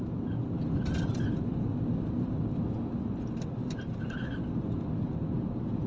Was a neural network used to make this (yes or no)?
no